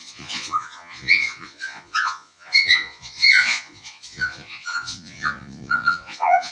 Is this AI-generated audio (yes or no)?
yes